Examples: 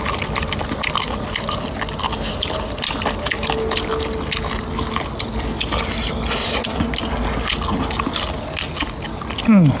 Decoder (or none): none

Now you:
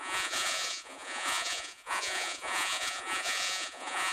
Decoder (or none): vocoder, Vocos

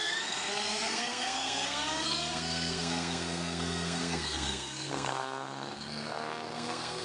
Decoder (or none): codec, SNAC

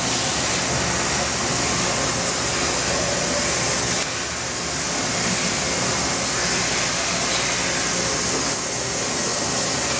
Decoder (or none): none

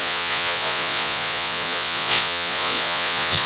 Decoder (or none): vocoder, Vocos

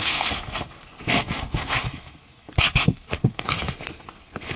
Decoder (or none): codec, SNAC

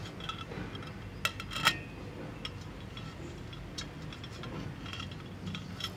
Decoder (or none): none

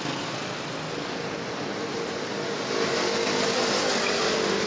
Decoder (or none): none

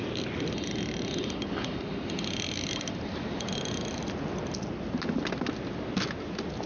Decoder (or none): none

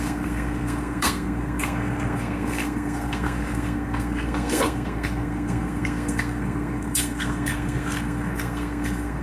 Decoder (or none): codec, SNAC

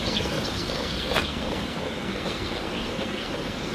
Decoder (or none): codec, SNAC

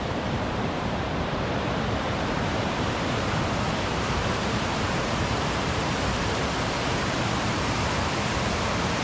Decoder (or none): vocoder, BigVGAN v2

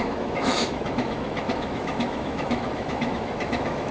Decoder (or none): autoencoder, DAC-VAE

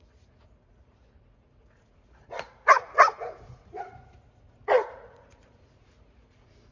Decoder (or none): vocoder, Vocos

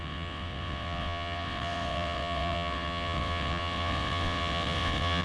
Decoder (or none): vocoder, WaveNeXt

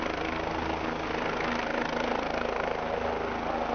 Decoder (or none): none